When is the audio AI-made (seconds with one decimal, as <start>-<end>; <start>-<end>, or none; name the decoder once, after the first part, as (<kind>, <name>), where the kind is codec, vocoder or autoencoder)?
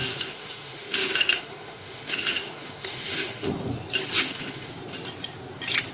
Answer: 0.0-3.5 (autoencoder, DAC-VAE); 4.2-4.7